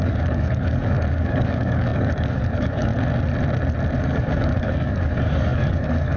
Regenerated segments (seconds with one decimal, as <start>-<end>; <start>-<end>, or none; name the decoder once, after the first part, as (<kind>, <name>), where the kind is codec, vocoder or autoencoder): 0.0-2.9 (codec, DAC); 4.0-6.2